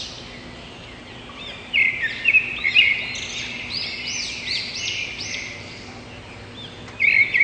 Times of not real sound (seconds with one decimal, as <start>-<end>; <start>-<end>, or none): none